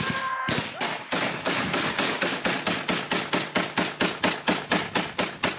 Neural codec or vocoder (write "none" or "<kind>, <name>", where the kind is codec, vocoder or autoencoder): none